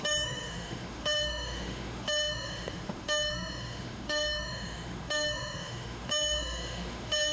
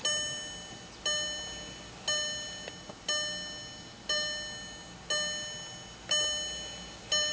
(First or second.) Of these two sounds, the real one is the second